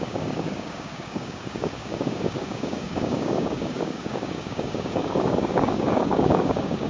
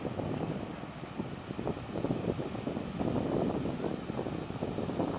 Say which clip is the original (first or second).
second